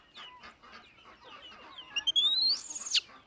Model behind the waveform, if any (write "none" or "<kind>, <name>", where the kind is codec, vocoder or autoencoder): none